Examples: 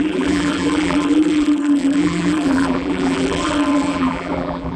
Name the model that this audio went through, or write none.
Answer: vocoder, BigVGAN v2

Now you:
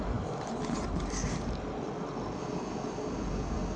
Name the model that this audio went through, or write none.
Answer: none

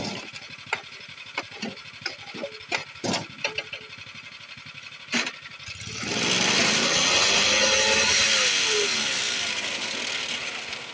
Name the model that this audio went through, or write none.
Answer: none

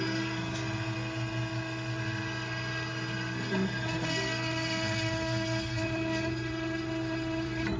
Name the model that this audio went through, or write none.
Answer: none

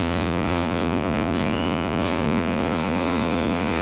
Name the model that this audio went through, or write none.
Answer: vocoder, Vocos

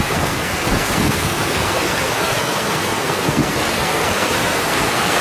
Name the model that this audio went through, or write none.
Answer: codec, SNAC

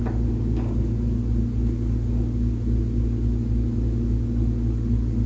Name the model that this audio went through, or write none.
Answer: none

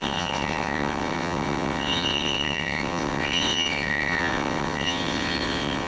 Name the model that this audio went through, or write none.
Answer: vocoder, WaveNeXt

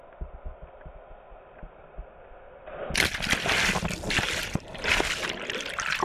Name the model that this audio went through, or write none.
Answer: none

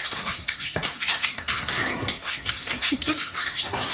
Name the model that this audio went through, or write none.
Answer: codec, SNAC